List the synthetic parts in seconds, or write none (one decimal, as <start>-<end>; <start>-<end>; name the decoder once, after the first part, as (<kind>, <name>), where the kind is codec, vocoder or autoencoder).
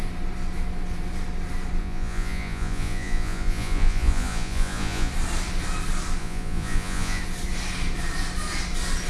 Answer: 1.8-5.1 (vocoder, Vocos); 6.2-7.2